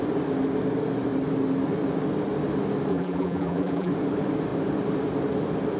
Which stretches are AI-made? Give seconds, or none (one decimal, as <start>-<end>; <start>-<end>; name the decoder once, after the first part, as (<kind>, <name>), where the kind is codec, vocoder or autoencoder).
2.9-3.9 (vocoder, BigVGAN v2)